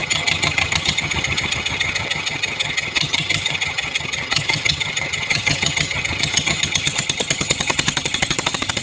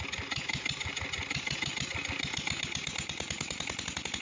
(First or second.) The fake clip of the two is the first